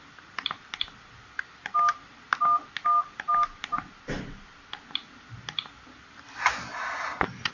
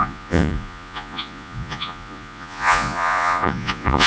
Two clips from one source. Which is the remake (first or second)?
second